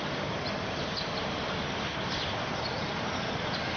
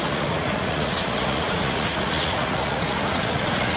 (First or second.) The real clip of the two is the first